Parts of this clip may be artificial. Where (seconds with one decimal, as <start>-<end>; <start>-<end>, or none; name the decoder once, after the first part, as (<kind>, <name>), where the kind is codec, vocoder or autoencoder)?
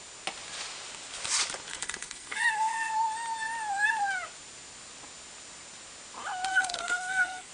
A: 1.7-2.9 (codec, SNAC); 6.5-7.5